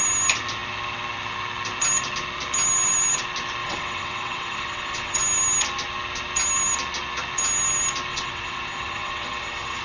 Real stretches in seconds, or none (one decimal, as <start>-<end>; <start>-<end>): 0.0-3.6; 5.2-8.1